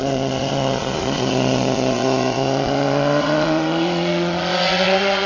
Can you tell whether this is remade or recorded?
remade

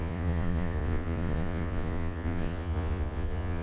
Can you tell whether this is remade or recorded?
remade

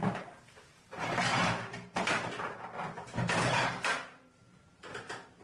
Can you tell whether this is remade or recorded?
remade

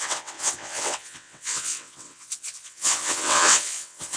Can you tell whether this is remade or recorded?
remade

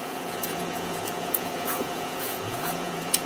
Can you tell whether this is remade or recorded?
remade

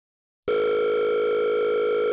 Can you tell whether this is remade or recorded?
recorded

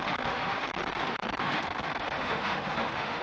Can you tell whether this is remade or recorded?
remade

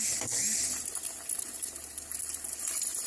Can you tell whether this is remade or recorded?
recorded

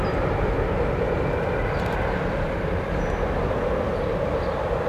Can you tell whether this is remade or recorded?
recorded